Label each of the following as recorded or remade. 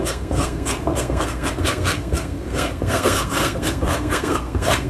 remade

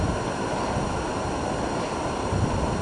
recorded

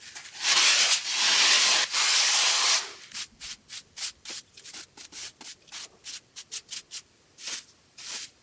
recorded